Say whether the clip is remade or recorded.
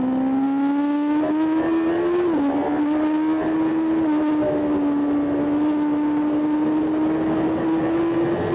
recorded